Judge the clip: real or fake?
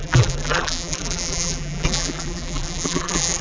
fake